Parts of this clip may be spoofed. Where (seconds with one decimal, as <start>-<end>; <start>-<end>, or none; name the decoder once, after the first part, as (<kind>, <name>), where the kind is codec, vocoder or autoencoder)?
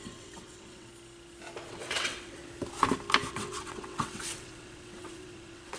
0.0-0.9 (vocoder, WaveNeXt); 1.7-2.4; 3.3-5.8